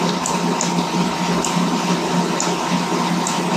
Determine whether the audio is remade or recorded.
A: recorded